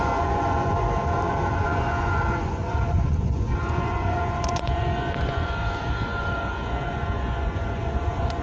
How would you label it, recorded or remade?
remade